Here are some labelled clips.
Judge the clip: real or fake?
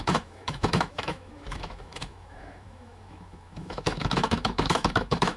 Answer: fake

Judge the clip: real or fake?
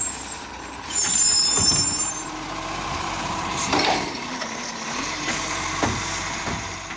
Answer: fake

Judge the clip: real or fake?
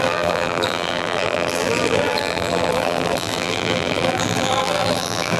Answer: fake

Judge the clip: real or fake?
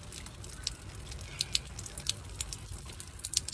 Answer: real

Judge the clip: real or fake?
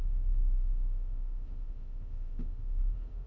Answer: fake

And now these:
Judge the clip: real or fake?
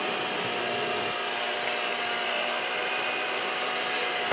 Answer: real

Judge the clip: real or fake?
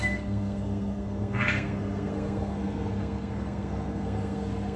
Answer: fake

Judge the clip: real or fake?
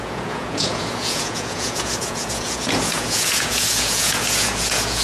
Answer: fake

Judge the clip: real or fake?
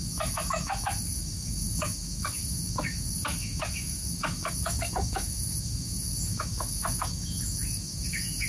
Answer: fake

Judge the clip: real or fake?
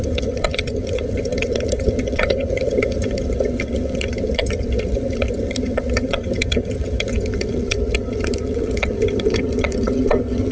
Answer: fake